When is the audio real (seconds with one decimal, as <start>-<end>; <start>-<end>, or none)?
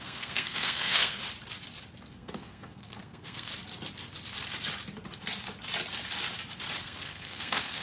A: 1.2-2.1; 3.5-6.8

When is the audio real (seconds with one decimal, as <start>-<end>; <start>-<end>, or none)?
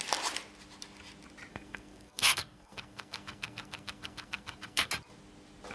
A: 0.0-1.5; 4.9-5.7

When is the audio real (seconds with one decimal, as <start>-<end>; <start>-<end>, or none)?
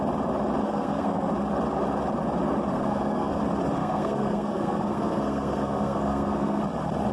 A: 0.0-0.6; 1.3-2.7; 3.4-3.8; 6.6-7.1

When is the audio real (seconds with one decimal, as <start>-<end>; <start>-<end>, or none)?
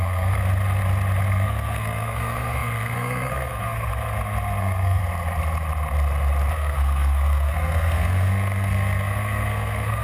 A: 0.4-1.3; 3.9-4.6; 5.0-6.5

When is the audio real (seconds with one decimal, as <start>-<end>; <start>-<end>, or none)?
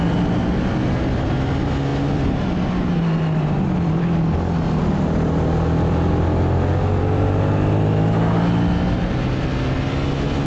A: 0.0-10.5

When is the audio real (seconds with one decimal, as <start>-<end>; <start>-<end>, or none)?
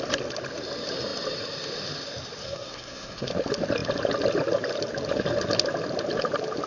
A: 0.0-2.4; 3.3-6.7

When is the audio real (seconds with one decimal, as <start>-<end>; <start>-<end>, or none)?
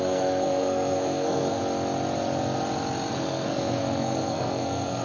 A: 1.6-3.1